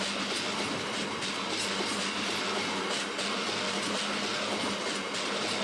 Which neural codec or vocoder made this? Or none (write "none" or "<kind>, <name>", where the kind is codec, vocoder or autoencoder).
none